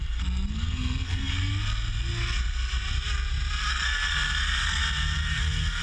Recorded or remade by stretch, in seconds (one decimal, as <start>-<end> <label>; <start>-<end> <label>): 0.0-1.5 remade; 1.5-3.7 recorded; 3.7-4.8 remade; 4.8-5.8 recorded

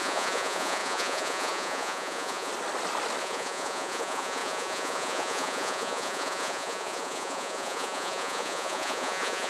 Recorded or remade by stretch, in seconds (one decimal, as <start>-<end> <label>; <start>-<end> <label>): 0.0-2.5 remade; 2.5-3.2 recorded; 3.2-9.5 remade